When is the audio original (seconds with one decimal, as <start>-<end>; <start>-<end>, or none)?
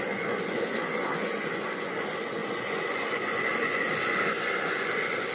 none